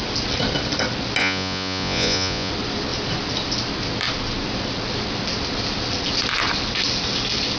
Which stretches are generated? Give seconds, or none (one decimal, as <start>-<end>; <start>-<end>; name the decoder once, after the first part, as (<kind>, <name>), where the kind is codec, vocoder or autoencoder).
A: 1.2-2.5 (vocoder, Vocos)